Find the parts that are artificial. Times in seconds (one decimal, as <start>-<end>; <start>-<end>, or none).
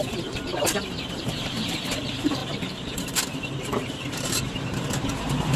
0.0-5.6